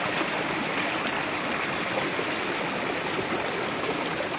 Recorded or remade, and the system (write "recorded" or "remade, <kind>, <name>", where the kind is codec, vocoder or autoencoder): recorded